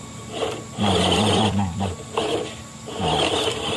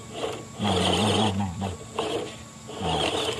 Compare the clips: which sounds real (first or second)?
second